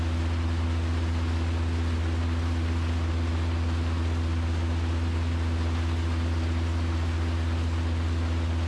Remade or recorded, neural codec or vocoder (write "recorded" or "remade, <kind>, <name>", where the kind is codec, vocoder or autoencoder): recorded